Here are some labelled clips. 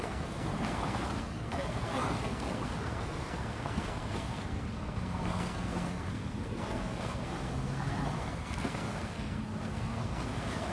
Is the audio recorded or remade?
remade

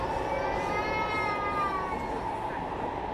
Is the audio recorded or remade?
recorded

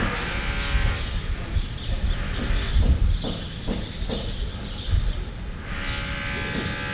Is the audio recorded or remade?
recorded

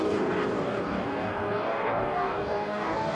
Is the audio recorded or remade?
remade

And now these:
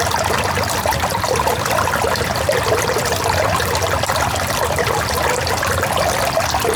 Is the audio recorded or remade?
recorded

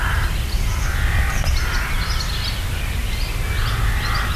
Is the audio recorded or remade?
recorded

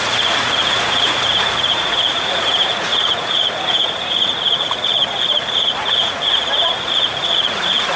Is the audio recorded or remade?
remade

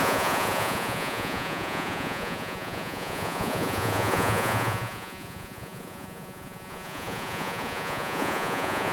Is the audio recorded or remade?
remade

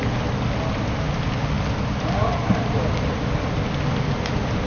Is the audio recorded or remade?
recorded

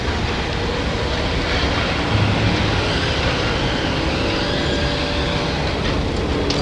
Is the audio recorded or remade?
recorded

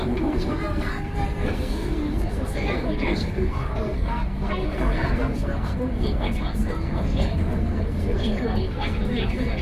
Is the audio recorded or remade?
remade